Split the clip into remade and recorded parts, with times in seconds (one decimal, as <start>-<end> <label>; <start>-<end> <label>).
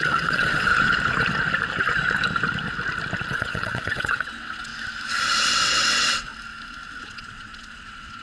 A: 0.0-0.7 remade; 0.7-3.3 recorded; 3.3-4.7 remade; 4.7-5.5 recorded; 5.5-6.3 remade; 6.3-7.0 recorded; 7.0-8.2 remade